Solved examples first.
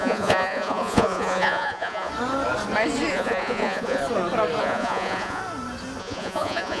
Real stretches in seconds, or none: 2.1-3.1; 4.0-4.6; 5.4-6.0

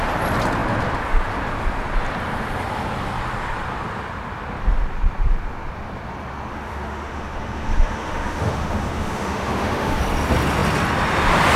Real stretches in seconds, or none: 0.0-6.5; 10.0-11.6

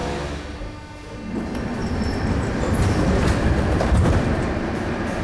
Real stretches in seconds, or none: 0.0-1.8

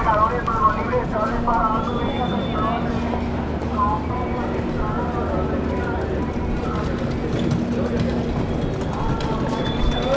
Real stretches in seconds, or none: 0.0-10.2

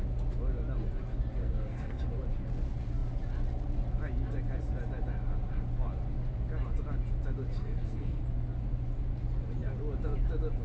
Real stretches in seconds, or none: 0.0-1.4; 2.0-7.6; 8.2-10.6

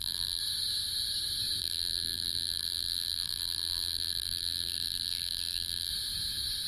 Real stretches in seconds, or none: 0.4-1.6; 5.9-6.7

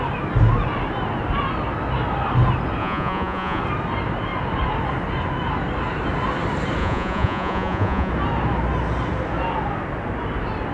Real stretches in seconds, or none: 0.0-2.8; 3.6-6.8; 8.1-10.7